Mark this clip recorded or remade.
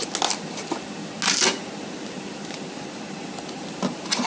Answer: recorded